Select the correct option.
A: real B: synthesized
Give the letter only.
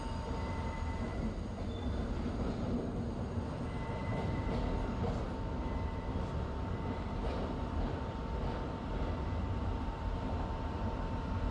A